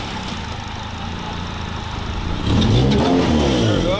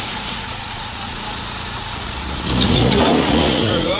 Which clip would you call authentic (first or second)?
first